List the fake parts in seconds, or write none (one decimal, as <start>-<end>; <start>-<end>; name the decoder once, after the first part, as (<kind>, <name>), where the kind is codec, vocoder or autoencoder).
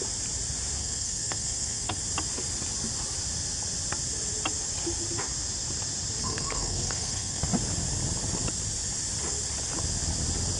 0.8-2.0 (codec, SNAC); 6.2-7.4